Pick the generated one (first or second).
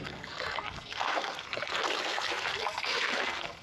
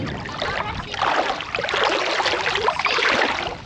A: first